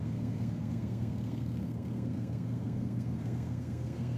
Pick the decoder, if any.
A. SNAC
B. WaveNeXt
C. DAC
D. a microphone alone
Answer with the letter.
A